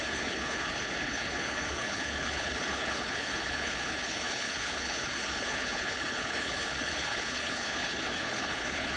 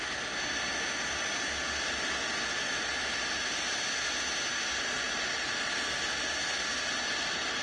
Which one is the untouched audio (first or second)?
second